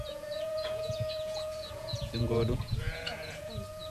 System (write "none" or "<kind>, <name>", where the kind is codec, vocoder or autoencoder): vocoder, Vocos